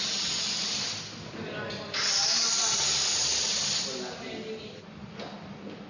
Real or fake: real